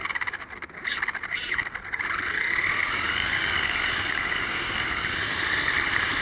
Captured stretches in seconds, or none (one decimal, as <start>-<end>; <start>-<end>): 0.0-2.8; 5.4-6.2